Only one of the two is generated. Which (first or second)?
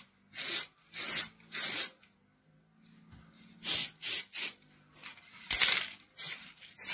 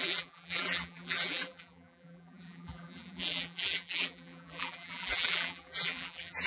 second